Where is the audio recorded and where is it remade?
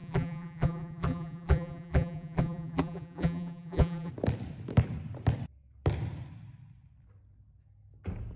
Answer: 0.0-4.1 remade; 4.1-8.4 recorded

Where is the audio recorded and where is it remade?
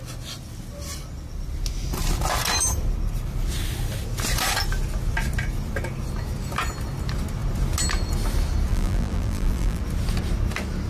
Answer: 0.0-8.7 recorded; 8.7-9.8 remade; 9.8-10.9 recorded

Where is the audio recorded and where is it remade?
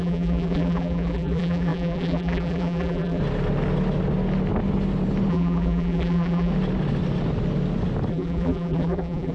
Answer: 0.0-3.2 remade; 3.2-5.3 recorded; 5.3-6.5 remade; 6.5-8.1 recorded; 8.1-9.3 remade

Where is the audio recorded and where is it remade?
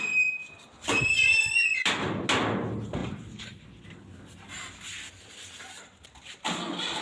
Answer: 0.0-0.4 recorded; 0.4-1.4 remade; 1.4-7.0 recorded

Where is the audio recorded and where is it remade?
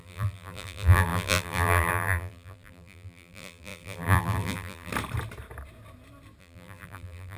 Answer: 0.0-4.9 remade; 4.9-6.4 recorded; 6.4-7.4 remade